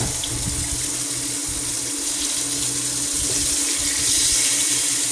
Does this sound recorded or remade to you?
recorded